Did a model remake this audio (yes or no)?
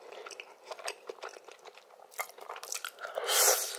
yes